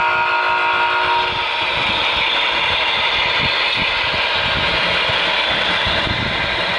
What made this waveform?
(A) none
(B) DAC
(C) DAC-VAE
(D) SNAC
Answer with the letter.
A